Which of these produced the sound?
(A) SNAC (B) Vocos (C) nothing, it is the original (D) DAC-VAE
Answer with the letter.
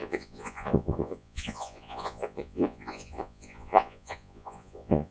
B